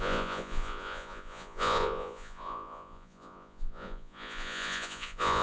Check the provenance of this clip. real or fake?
fake